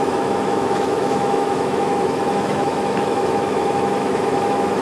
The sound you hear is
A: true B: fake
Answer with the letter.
B